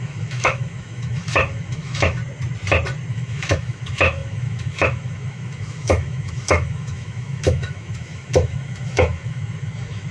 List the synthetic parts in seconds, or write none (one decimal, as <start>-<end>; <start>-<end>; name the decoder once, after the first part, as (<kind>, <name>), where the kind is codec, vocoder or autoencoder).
0.0-2.2 (autoencoder, DAC-VAE); 3.1-10.1